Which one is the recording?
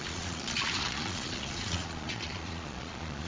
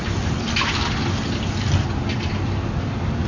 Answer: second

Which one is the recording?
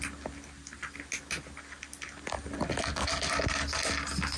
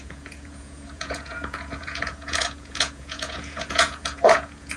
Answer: first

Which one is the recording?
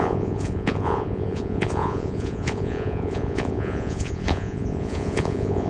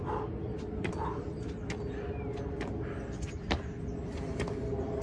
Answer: second